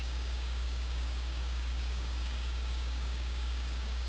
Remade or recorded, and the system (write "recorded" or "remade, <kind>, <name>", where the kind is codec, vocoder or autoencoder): remade, codec, DAC